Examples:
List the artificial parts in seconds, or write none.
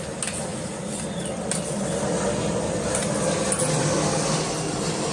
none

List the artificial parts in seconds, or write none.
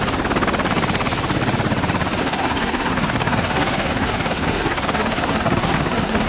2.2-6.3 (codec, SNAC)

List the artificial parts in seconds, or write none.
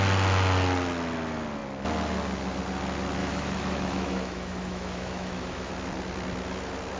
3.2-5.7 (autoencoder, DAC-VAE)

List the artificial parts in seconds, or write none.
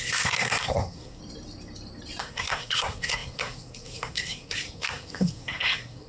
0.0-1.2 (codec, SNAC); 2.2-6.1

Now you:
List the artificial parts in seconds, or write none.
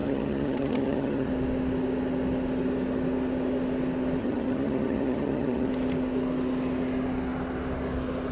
0.0-1.3 (vocoder, HiFi-GAN); 4.2-5.7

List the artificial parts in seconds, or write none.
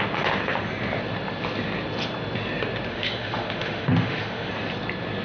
2.9-4.5 (autoencoder, DAC-VAE)